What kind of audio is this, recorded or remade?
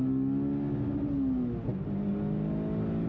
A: recorded